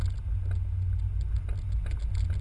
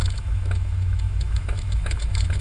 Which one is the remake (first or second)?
second